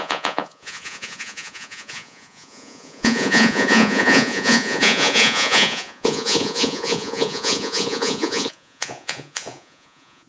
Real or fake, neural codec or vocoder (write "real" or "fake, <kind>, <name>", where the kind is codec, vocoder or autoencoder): fake, vocoder, Vocos